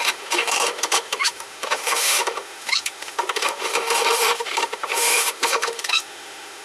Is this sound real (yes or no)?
no